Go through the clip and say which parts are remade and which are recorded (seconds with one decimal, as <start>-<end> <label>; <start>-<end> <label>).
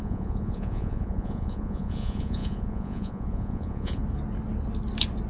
0.0-4.0 remade; 4.0-5.3 recorded